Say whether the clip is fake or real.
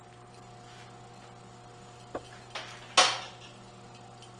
real